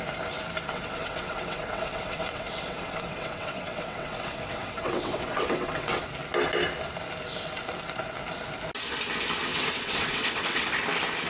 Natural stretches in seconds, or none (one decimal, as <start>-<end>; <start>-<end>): 0.0-0.7; 6.0-9.5; 10.7-11.3